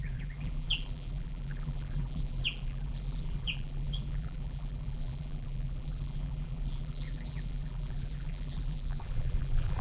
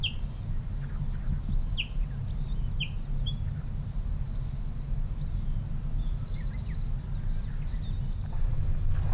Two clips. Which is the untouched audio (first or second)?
second